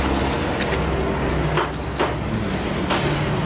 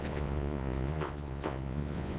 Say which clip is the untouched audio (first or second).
first